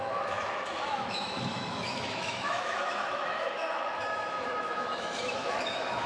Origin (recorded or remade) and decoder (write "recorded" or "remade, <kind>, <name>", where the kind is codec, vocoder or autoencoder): remade, autoencoder, DAC-VAE